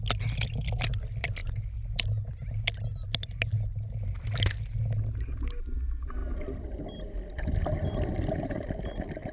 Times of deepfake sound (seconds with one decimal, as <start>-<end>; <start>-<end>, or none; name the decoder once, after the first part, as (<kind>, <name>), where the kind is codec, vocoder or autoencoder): none